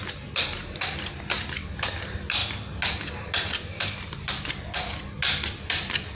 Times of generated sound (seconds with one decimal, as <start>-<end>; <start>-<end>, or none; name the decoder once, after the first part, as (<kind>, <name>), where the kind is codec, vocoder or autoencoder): none